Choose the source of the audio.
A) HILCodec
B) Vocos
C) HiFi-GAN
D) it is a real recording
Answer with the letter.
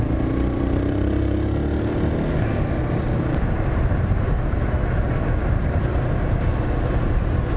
D